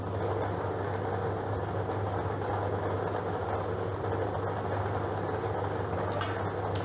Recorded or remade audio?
recorded